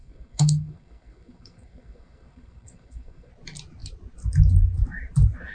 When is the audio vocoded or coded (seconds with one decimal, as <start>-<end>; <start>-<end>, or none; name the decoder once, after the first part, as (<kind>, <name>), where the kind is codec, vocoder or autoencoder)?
0.0-3.3 (codec, SNAC)